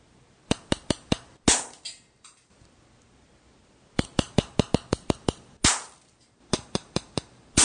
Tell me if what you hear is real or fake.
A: real